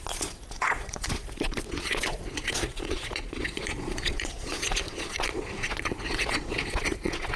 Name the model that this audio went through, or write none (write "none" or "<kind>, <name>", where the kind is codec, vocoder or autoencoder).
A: vocoder, Vocos